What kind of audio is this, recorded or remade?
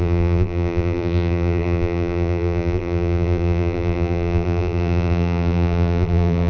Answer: remade